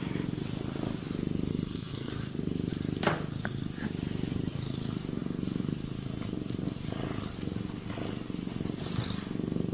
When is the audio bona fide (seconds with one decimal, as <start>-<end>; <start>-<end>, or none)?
0.0-1.5; 2.1-9.7